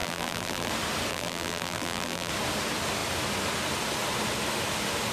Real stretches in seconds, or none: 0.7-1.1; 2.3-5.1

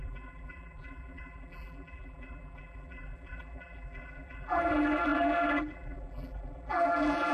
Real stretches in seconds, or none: none

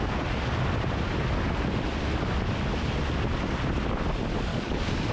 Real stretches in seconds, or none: 0.0-4.5